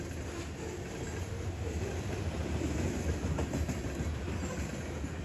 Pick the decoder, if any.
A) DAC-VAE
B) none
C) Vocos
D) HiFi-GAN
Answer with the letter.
B